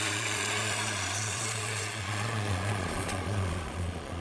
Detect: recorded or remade remade